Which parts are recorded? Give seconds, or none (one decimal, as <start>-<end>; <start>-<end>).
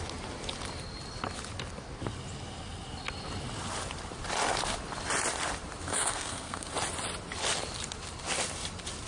0.0-5.9; 6.7-9.1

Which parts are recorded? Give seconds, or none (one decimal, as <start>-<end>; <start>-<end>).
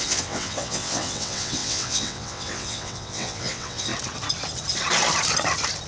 3.9-5.9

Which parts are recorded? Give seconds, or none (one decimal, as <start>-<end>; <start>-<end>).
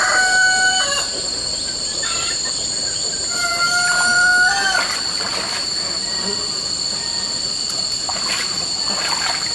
4.3-5.5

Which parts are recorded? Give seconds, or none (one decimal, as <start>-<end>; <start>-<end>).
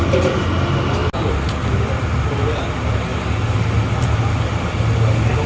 0.0-5.5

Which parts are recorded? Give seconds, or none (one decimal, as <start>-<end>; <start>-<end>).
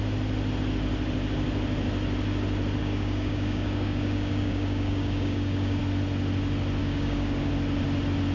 0.0-2.8; 5.8-6.8; 7.5-8.3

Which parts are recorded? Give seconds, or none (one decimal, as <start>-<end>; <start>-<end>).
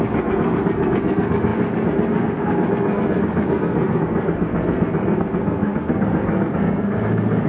none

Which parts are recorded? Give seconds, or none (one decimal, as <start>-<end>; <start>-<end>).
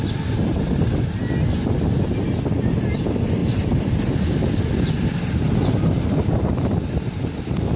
0.0-3.4